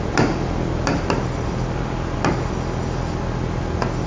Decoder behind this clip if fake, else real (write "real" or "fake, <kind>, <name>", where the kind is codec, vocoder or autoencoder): real